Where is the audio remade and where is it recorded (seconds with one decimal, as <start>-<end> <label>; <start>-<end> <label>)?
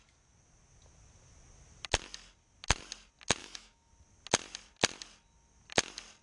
0.0-3.4 recorded; 3.4-3.9 remade; 3.9-6.2 recorded